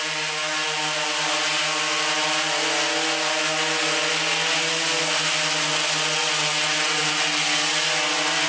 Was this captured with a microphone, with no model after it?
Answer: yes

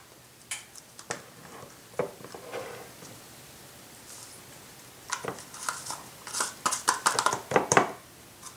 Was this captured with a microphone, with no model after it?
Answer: no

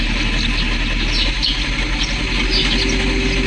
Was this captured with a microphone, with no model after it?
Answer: yes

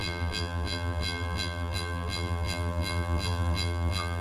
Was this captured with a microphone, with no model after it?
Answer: no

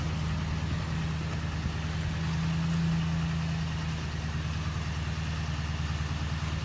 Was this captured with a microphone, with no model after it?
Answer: yes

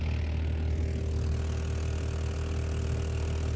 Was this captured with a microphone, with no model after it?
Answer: yes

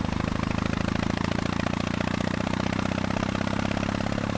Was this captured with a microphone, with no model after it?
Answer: no